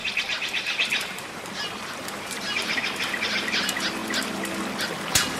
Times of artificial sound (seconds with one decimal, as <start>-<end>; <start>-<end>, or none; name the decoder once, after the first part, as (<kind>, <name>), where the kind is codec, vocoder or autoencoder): 0.0-2.8 (vocoder, BigVGAN v2)